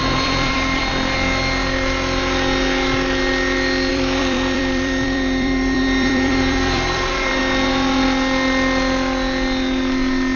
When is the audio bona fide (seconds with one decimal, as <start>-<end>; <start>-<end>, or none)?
0.9-3.9; 7.4-10.4